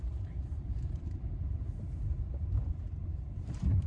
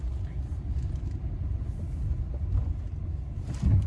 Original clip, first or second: second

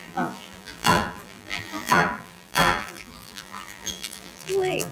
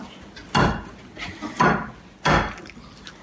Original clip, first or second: second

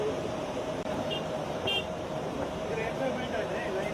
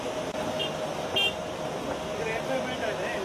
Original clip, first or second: second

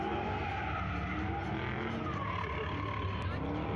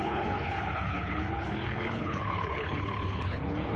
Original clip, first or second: first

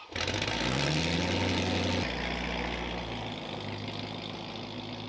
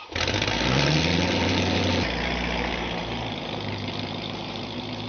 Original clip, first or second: first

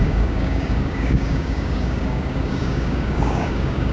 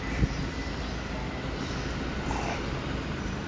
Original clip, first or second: second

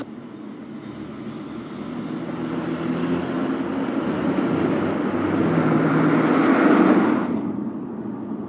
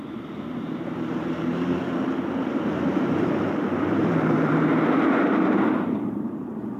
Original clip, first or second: first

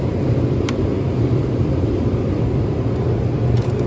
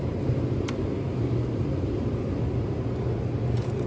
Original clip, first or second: second